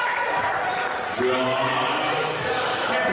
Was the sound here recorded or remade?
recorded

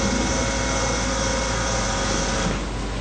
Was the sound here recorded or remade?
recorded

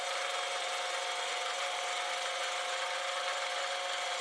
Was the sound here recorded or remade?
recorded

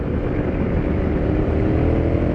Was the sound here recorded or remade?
recorded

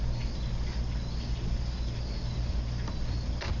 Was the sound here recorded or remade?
recorded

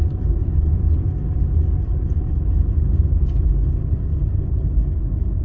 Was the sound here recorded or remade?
recorded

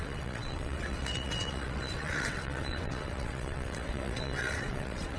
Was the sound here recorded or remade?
remade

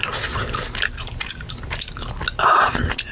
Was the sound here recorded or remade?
recorded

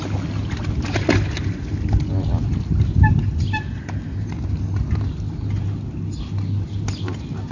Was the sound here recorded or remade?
recorded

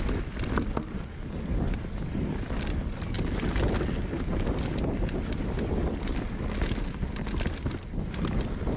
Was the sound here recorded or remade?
recorded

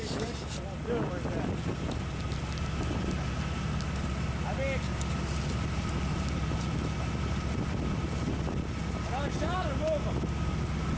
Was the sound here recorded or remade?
recorded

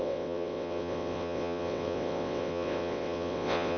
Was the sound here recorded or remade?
remade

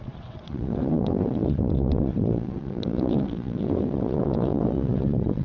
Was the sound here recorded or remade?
remade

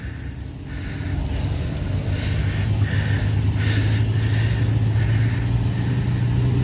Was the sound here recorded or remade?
recorded